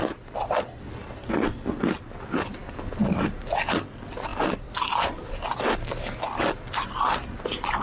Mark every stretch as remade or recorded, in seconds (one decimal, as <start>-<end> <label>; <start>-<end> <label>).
0.0-4.3 recorded; 4.3-5.2 remade; 5.2-7.8 recorded

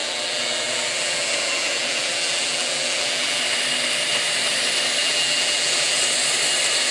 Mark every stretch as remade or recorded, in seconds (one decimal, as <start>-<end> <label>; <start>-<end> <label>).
0.0-3.4 remade; 3.4-5.0 recorded; 5.0-6.0 remade; 6.0-6.9 recorded

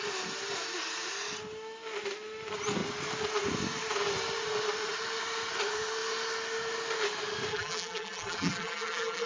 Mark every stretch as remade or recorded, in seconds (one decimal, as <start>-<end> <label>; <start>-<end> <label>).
0.0-7.5 recorded; 7.5-9.3 remade

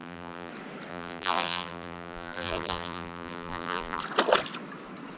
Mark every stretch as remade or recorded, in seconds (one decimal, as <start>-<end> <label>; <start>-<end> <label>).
0.0-0.5 remade; 0.5-0.9 recorded; 0.9-4.0 remade; 4.0-5.2 recorded

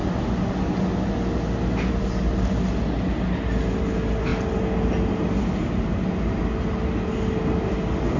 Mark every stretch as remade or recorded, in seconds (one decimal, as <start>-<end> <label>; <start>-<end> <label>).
0.0-8.2 recorded